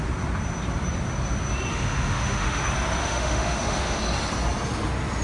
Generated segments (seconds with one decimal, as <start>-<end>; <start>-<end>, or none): 1.7-2.6; 3.0-4.0